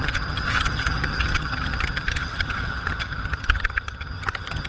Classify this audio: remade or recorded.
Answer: remade